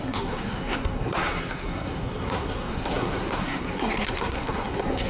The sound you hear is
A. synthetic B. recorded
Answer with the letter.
A